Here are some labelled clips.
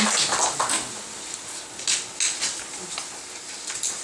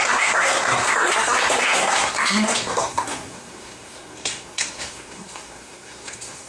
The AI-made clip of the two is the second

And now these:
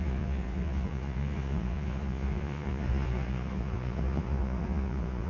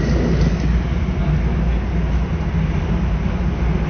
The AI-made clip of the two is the first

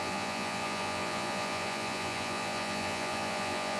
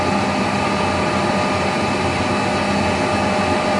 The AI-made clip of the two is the first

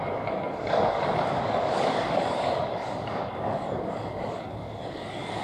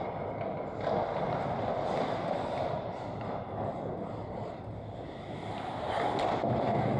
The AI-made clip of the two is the first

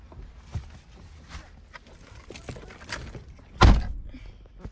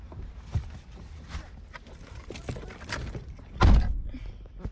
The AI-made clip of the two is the second